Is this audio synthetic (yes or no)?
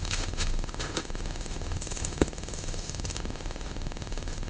yes